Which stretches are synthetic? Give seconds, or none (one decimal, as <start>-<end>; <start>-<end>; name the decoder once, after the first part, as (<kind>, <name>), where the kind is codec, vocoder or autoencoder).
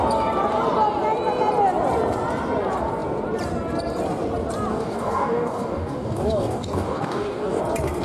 4.7-7.6 (codec, DAC)